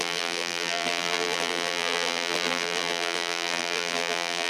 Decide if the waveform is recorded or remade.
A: remade